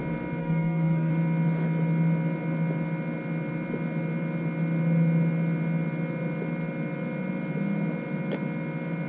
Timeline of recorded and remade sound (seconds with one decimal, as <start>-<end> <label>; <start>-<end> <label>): 0.0-0.4 recorded; 0.4-1.1 remade; 1.1-9.1 recorded